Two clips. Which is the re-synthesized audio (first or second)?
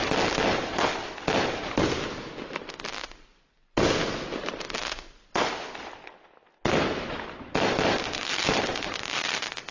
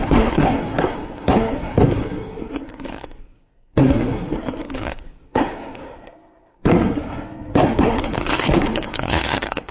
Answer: second